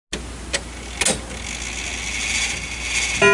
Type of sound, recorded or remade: recorded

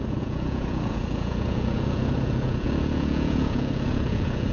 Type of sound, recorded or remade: remade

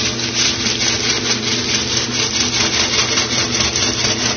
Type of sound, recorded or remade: recorded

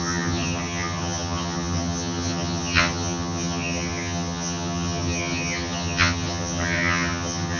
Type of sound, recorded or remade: remade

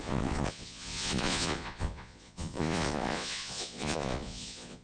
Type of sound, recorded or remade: remade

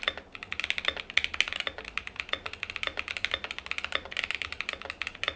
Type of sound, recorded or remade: recorded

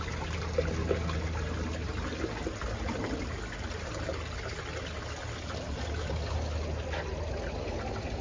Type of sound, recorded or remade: recorded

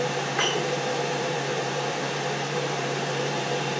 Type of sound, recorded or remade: remade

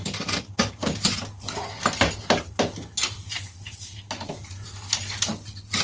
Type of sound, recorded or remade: recorded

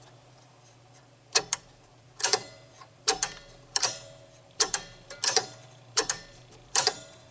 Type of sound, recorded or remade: remade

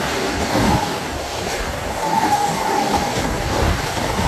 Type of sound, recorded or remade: remade